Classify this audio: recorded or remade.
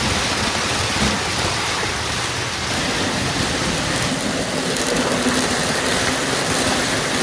recorded